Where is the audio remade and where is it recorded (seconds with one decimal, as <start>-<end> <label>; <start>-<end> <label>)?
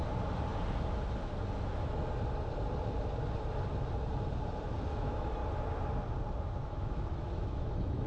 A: 0.0-4.6 recorded; 4.6-5.4 remade; 5.4-6.4 recorded; 6.4-8.1 remade